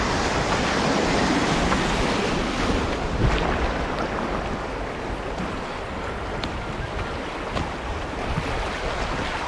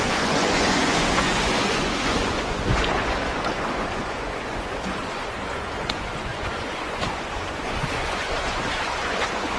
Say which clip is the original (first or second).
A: first